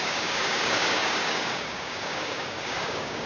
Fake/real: fake